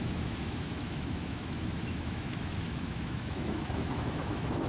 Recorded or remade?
remade